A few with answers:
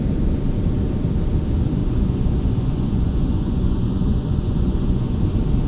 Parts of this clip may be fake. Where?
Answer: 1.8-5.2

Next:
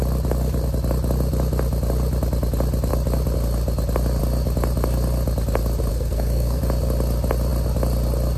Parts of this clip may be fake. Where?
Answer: 5.9-6.6